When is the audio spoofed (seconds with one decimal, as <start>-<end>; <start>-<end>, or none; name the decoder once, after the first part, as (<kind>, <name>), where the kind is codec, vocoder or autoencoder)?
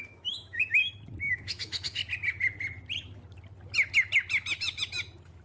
0.0-0.8 (autoencoder, DAC-VAE); 1.3-2.0